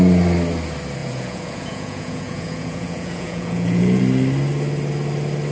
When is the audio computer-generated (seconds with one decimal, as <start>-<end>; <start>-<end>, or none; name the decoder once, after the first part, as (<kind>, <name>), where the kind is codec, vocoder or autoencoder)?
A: 1.0-4.0 (vocoder, Vocos)